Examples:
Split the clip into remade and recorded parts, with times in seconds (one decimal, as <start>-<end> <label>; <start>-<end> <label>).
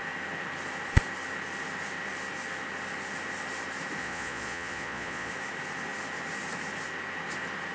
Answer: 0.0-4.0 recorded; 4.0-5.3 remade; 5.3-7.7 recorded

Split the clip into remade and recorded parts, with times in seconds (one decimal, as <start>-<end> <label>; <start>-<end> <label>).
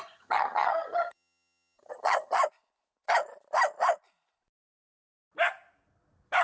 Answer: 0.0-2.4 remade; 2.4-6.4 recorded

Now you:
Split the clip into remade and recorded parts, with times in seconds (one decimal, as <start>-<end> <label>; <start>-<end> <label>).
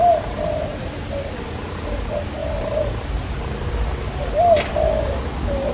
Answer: 0.0-5.7 recorded